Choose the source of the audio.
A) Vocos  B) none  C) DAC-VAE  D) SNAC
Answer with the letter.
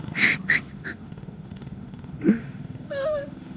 C